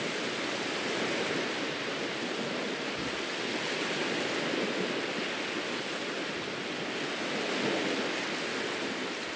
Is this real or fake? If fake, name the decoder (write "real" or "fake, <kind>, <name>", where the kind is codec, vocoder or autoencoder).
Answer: real